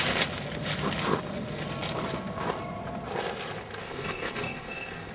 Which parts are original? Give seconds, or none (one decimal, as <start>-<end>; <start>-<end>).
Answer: 0.0-3.8